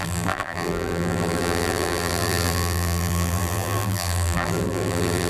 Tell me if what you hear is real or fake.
fake